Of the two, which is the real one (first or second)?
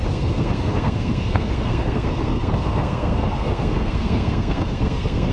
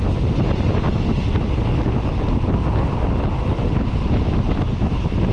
second